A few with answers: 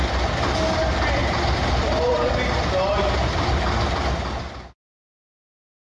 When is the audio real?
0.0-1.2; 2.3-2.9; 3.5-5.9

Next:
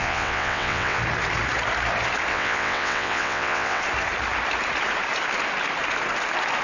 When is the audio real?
1.0-2.3; 3.8-6.6

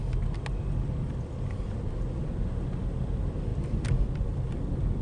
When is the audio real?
0.0-1.1; 2.3-3.5; 4.3-5.0

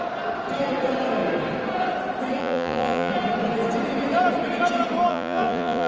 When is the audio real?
0.0-2.4; 3.1-5.1